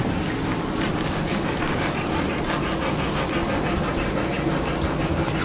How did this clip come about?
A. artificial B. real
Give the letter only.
B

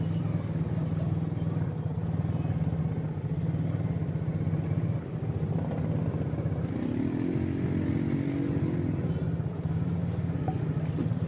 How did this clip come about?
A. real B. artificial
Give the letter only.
A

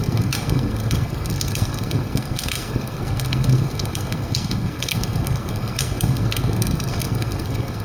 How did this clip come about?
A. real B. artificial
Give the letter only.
B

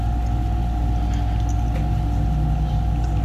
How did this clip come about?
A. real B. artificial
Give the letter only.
A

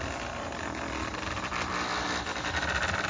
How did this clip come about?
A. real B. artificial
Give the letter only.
A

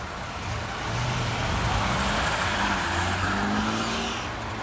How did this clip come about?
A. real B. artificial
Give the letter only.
A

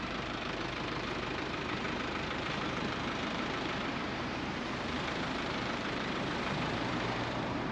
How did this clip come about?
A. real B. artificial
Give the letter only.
B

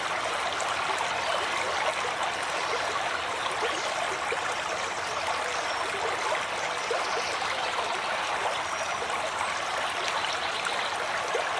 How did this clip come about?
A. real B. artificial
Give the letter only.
A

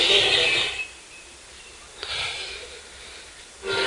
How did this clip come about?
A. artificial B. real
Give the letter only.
B